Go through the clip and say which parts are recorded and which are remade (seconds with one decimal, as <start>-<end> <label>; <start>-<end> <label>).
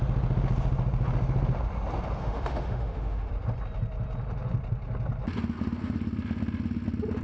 0.0-2.2 recorded; 2.2-3.3 remade; 3.3-7.2 recorded